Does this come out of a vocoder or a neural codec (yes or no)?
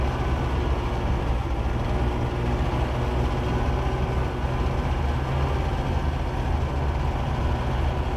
no